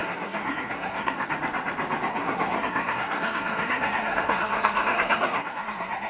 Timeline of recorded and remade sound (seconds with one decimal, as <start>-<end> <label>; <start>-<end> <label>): 0.0-1.3 remade; 1.3-2.1 recorded; 2.1-6.1 remade